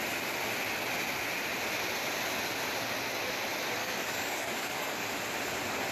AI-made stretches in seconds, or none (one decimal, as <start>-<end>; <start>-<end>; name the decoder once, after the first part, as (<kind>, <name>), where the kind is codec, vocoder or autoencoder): 3.8-5.1 (codec, DAC)